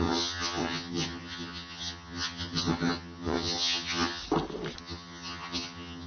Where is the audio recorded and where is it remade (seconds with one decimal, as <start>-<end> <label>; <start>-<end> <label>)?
0.0-4.2 remade; 4.2-4.8 recorded; 4.8-6.1 remade